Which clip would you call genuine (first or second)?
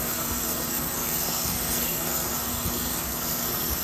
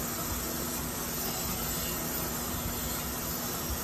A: second